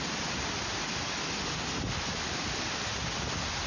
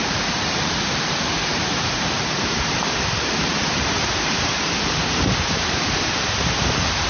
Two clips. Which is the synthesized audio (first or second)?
second